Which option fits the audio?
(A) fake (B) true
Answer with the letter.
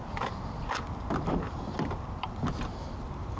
B